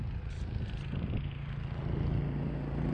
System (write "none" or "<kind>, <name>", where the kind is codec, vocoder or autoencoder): none